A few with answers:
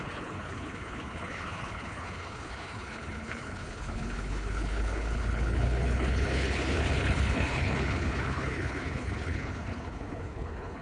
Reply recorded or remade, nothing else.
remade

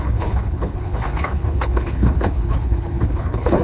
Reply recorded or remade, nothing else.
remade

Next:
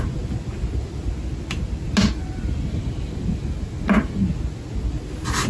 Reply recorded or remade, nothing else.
recorded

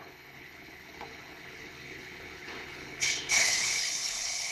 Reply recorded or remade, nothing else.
remade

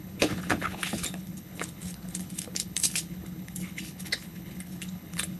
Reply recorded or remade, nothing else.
remade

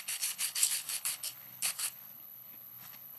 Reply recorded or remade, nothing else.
remade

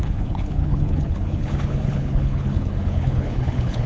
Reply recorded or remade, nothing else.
remade